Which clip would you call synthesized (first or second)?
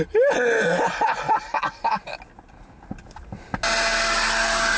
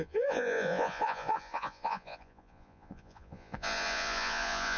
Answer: second